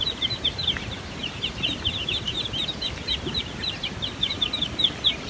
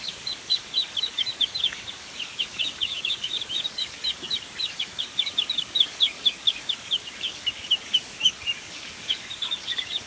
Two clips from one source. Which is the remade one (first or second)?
second